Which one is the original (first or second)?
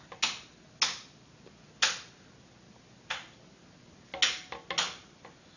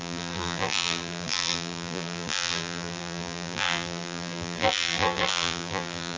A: first